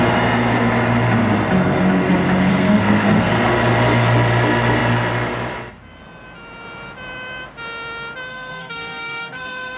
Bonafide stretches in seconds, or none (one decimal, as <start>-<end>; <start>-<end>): 0.0-2.5; 3.3-8.3